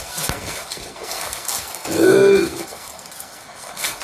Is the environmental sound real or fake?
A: fake